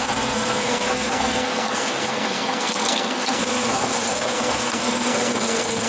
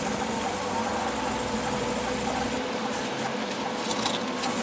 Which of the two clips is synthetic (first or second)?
first